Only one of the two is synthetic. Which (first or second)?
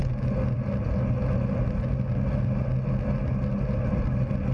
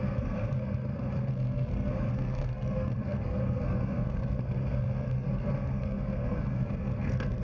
second